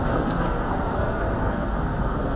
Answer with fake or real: fake